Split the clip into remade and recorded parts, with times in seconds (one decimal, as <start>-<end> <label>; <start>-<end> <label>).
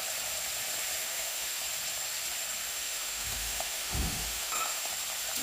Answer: 0.0-1.0 recorded; 1.0-1.6 remade; 1.6-2.7 recorded; 2.7-4.9 remade; 4.9-5.4 recorded